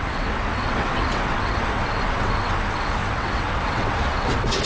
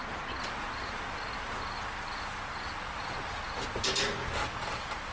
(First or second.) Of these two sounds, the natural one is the second